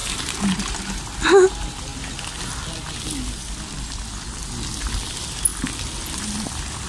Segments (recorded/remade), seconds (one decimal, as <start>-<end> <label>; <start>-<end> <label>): 0.0-0.8 remade; 0.8-6.9 recorded